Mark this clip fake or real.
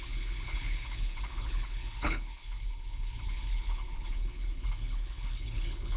fake